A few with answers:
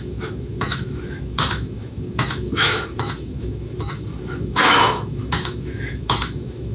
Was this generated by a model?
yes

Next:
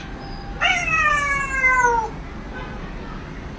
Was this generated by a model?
no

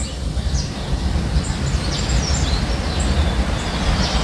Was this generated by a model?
no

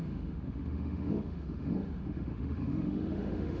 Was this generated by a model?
yes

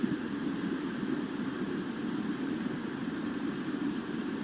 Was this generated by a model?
yes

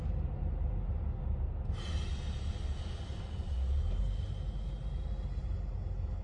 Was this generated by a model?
no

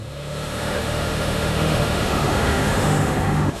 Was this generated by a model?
yes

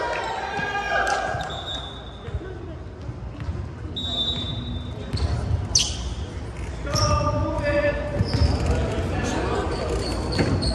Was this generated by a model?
no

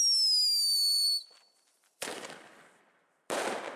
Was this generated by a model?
no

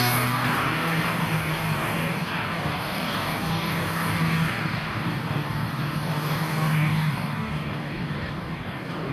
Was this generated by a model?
yes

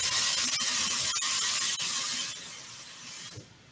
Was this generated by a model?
no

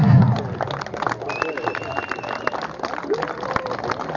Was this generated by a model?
no